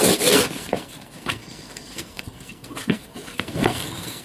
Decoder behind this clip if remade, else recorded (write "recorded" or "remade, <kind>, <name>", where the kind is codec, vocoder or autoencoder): remade, codec, SNAC